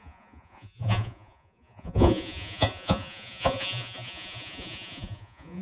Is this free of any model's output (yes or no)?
no